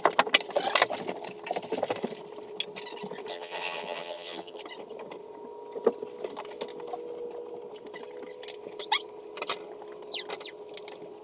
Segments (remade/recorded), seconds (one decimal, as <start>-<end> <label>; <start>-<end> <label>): 0.0-3.3 recorded; 3.3-4.6 remade; 4.6-11.2 recorded